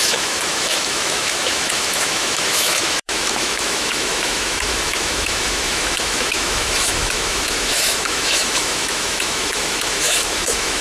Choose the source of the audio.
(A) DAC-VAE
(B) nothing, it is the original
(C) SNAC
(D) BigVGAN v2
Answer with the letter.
A